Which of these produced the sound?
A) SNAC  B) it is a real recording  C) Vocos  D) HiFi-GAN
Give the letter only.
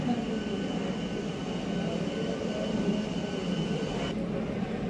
B